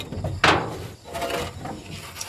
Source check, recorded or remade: recorded